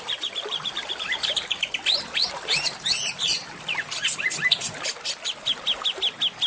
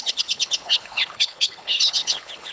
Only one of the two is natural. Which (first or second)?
first